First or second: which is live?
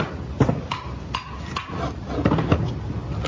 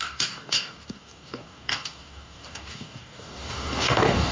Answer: first